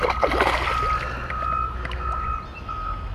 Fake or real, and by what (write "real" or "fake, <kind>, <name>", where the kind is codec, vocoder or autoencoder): real